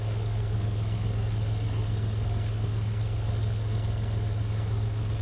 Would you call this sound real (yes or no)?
no